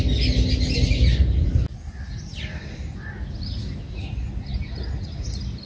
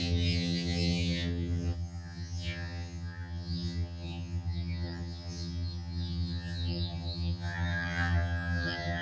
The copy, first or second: second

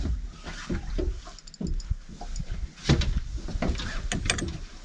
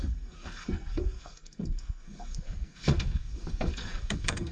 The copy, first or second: second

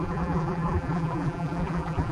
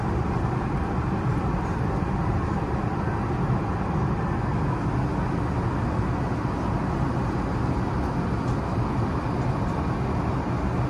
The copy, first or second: first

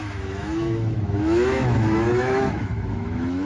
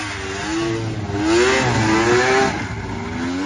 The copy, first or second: first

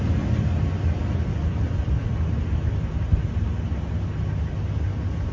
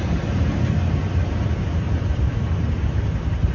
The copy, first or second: second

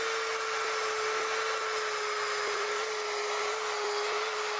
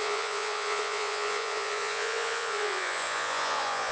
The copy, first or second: second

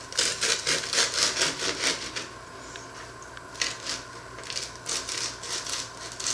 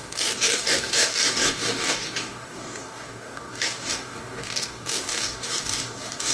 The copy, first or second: second